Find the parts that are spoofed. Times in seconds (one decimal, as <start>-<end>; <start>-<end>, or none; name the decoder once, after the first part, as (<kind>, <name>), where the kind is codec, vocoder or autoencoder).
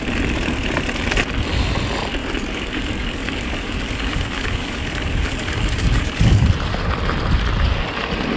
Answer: 2.2-6.5 (codec, DAC)